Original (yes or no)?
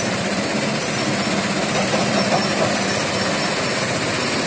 yes